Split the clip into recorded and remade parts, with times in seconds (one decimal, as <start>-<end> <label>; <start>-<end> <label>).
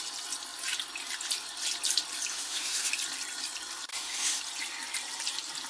0.0-2.3 recorded; 2.3-2.9 remade; 2.9-3.9 recorded; 3.9-4.4 remade; 4.4-5.7 recorded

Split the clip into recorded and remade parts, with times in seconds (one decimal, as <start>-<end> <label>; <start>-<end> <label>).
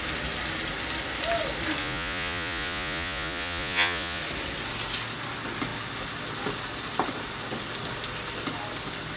0.0-1.8 recorded; 1.8-4.2 remade; 4.2-9.2 recorded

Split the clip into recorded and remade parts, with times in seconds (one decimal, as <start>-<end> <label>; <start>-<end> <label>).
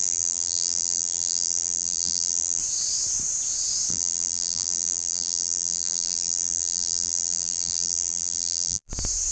0.0-2.6 remade; 2.6-3.9 recorded; 3.9-8.9 remade; 8.9-9.3 recorded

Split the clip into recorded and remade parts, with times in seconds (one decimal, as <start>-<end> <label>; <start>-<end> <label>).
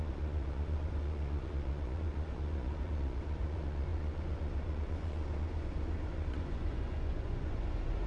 0.0-8.1 remade